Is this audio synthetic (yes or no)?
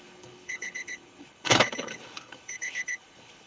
yes